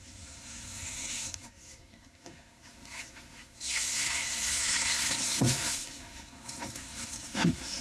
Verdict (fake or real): fake